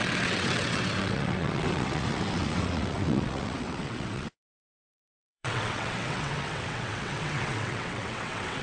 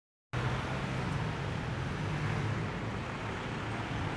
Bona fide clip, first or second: second